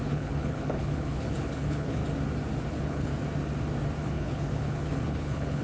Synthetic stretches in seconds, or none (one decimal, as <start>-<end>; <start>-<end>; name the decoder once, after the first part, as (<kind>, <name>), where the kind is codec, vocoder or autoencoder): 0.0-2.0 (codec, HILCodec); 2.7-3.1; 4.0-5.6